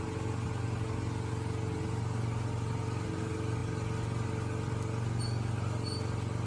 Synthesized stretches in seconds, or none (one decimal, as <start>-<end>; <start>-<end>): none

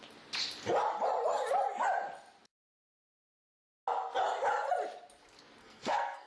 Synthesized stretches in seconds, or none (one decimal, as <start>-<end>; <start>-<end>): 5.6-6.3

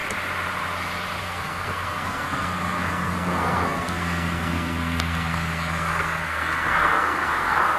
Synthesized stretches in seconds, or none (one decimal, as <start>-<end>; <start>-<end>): 1.2-7.8

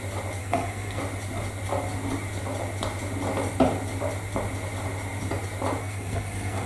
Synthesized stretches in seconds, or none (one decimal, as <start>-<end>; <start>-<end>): 0.4-1.0; 5.8-6.7